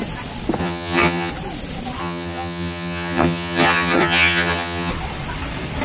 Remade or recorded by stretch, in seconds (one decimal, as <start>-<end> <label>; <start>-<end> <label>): 0.0-0.6 recorded; 0.6-1.3 remade; 1.3-2.0 recorded; 2.0-4.9 remade; 4.9-5.8 recorded